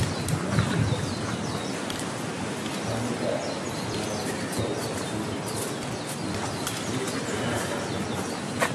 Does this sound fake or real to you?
real